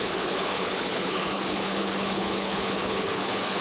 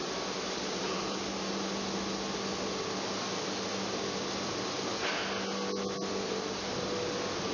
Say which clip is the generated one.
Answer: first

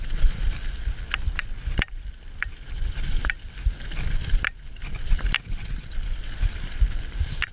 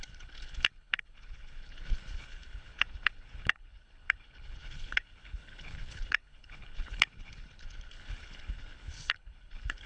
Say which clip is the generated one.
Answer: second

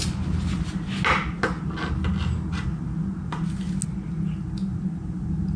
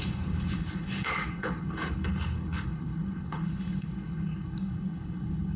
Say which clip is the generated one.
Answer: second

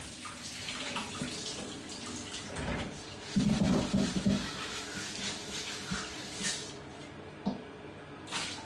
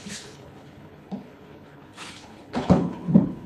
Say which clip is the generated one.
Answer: second